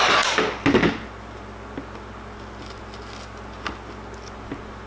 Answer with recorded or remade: recorded